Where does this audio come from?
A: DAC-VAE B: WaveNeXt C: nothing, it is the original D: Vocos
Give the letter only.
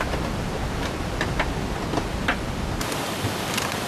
C